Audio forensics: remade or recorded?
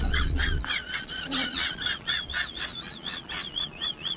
remade